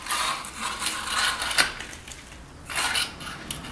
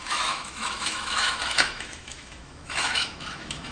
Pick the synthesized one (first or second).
second